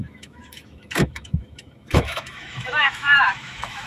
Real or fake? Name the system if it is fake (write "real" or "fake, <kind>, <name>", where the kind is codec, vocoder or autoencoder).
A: fake, autoencoder, DAC-VAE